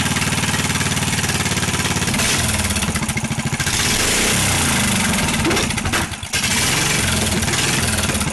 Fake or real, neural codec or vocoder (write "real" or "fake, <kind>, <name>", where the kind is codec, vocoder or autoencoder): real